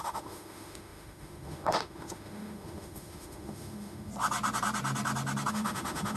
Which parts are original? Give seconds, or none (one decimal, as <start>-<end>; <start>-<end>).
4.1-5.5